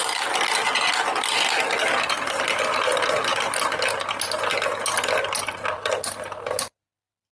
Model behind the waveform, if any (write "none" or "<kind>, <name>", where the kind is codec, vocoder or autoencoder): none